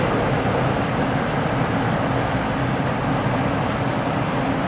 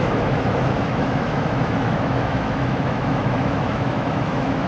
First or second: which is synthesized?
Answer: second